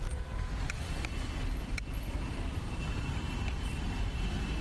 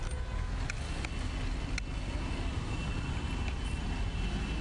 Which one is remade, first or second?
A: first